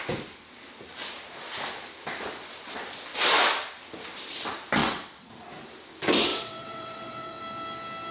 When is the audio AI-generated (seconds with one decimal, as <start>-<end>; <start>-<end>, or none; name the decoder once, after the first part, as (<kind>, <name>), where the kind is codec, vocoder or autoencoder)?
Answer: 4.8-5.3 (vocoder, WaveNeXt); 6.3-7.4